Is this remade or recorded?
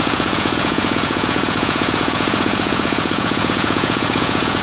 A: remade